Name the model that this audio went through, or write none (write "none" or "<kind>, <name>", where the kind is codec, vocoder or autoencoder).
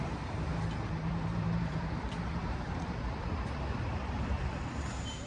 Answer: vocoder, BigVGAN v2